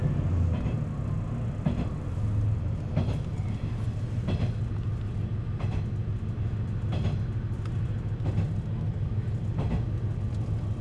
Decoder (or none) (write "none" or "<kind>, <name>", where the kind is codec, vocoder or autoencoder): none